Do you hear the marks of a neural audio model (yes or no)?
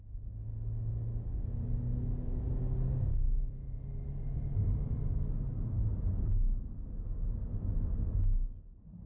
no